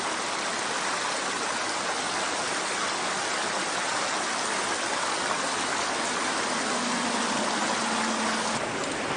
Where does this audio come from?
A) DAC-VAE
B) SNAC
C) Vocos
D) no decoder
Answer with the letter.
D